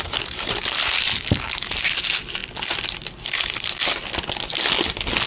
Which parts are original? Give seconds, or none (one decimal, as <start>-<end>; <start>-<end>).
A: 0.0-5.3